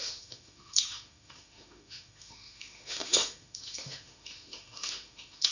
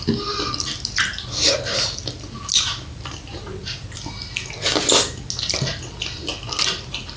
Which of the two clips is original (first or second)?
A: second